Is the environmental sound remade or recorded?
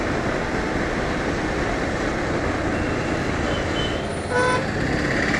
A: recorded